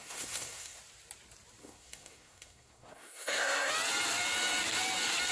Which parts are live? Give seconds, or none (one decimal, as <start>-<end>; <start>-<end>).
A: 0.8-1.6; 3.7-5.3